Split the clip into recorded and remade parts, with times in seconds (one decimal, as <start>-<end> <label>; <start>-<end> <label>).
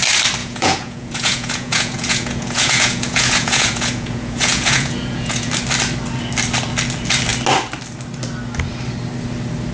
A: 0.0-0.4 recorded; 0.4-5.5 remade; 5.5-9.7 recorded